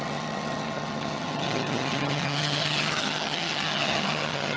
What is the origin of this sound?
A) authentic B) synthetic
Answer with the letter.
B